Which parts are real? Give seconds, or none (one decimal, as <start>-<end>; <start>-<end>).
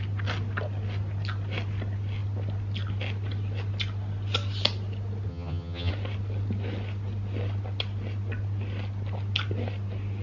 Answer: 0.0-5.3; 5.9-10.2